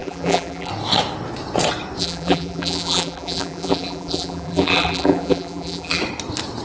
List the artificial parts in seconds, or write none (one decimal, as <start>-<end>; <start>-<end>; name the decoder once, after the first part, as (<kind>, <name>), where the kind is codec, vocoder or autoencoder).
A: 0.0-0.7 (vocoder, BigVGAN v2); 2.0-6.0